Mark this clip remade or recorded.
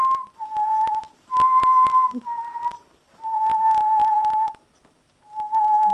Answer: recorded